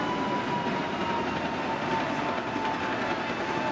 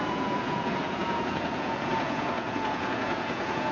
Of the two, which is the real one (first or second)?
first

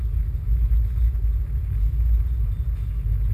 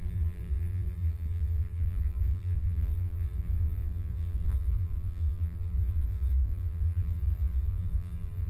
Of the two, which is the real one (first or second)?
first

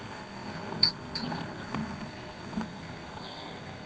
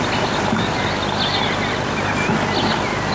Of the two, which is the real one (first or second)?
second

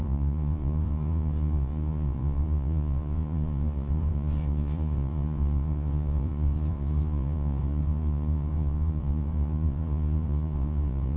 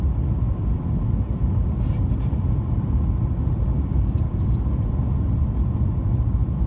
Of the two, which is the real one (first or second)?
second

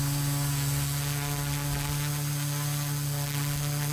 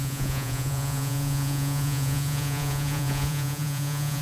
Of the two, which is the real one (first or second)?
first